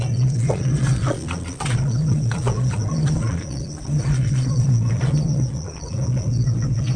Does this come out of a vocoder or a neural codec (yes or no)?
yes